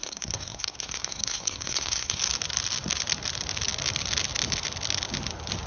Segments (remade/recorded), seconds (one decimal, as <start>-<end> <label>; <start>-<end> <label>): 0.0-2.2 remade; 2.2-5.7 recorded